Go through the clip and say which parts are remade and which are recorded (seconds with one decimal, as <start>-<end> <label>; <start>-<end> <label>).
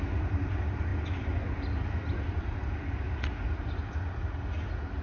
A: 0.0-5.0 recorded